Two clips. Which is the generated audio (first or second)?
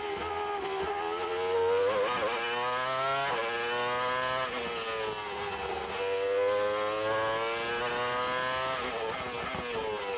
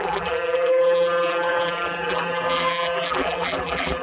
second